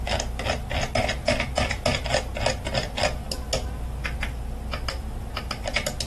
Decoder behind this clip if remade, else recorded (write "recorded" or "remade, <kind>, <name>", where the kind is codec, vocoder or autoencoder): recorded